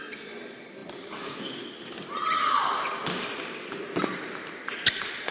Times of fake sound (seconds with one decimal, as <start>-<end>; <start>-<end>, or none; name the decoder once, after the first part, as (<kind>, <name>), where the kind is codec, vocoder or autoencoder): none